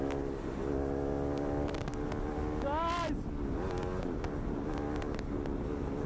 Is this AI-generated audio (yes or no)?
no